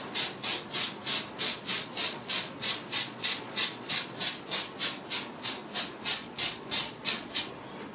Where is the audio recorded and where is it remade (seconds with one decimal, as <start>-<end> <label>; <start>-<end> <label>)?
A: 0.0-1.4 recorded; 1.4-4.7 remade; 4.7-6.2 recorded; 6.2-7.4 remade; 7.4-7.9 recorded